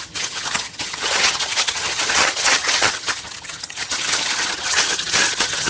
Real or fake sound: fake